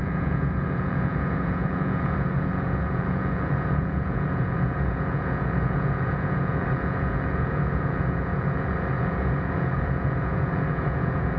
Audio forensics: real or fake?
fake